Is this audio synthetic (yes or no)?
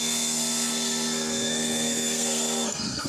yes